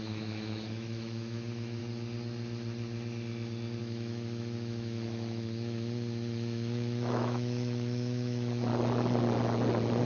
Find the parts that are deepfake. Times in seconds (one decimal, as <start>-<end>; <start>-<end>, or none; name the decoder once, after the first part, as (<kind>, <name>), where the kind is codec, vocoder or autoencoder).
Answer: 0.0-1.8 (autoencoder, DAC-VAE); 3.8-8.7